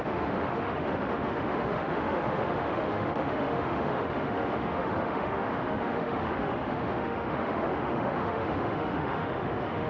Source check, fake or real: fake